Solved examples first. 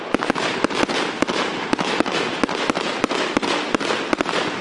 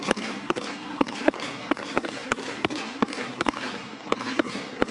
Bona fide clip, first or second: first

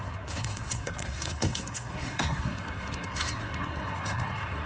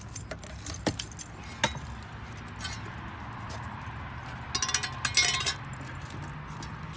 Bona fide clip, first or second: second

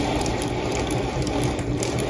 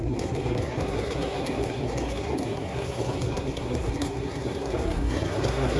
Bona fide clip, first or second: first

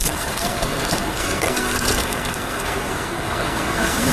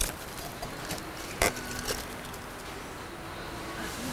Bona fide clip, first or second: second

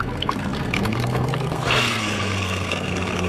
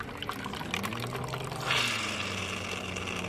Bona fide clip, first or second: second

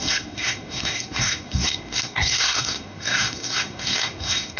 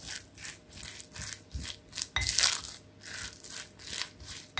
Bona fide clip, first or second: second